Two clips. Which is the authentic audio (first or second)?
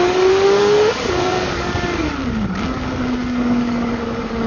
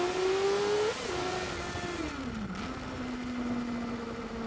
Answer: second